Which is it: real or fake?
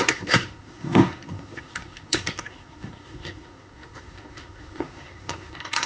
fake